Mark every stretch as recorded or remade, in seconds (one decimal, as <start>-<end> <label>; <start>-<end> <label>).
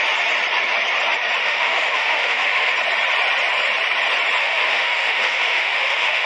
0.0-1.4 recorded; 1.4-2.7 remade; 2.7-4.4 recorded; 4.4-6.3 remade